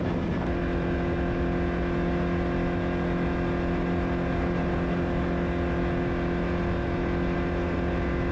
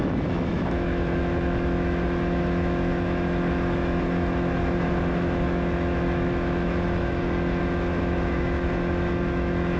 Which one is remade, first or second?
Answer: second